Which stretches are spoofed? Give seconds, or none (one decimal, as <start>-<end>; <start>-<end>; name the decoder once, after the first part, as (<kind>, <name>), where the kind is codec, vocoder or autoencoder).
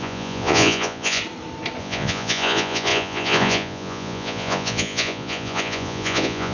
0.0-1.2 (vocoder, Vocos); 1.8-6.5